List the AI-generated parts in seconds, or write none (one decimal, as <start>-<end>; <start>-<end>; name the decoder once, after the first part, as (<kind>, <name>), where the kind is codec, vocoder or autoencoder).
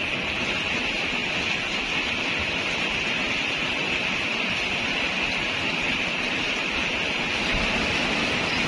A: none